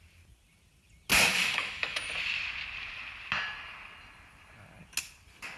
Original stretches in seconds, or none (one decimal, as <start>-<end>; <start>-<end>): 0.0-1.3; 2.1-5.6